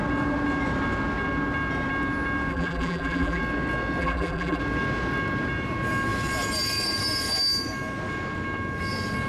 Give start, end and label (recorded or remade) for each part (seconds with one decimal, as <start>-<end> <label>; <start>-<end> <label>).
0.0-2.5 recorded; 2.5-3.4 remade; 3.4-4.0 recorded; 4.0-4.6 remade; 4.6-9.3 recorded